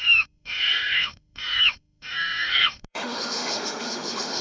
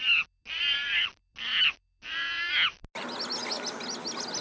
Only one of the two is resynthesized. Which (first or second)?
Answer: first